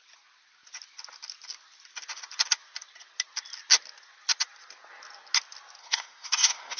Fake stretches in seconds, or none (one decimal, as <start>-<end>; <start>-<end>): 5.8-6.8

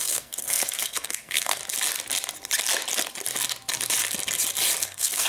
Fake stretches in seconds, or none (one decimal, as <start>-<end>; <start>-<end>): 0.0-1.6; 4.8-5.3

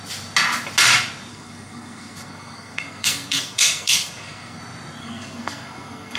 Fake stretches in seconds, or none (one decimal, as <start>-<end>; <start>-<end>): 1.3-4.6; 5.0-6.2

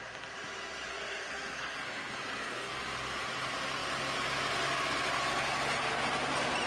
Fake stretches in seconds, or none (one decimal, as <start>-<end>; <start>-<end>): 0.9-2.8